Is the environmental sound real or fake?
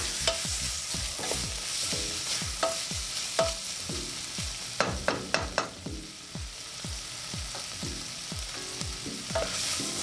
real